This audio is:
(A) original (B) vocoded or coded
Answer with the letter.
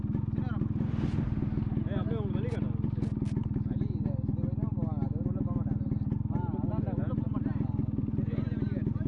A